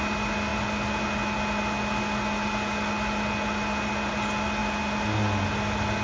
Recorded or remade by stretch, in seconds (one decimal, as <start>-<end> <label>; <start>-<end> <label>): 0.0-6.0 recorded